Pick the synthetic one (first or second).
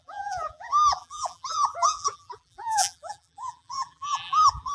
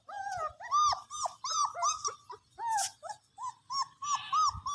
first